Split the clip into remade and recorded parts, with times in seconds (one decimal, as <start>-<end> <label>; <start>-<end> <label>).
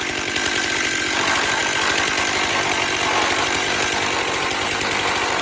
0.0-5.4 recorded